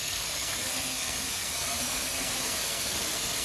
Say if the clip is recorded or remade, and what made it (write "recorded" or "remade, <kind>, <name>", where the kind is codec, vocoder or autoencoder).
remade, codec, SNAC